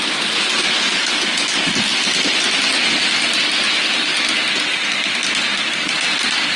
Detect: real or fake real